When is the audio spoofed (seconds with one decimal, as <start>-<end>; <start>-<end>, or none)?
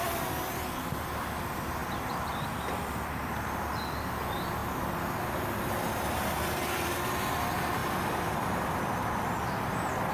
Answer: none